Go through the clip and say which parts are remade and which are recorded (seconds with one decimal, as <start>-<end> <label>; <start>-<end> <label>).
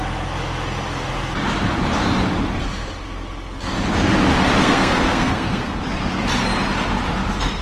0.0-4.6 recorded; 4.6-5.7 remade; 5.7-7.6 recorded